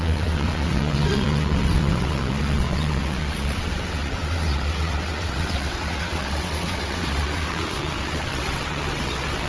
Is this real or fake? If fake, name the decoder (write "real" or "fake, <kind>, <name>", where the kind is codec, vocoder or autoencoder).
fake, vocoder, WaveNeXt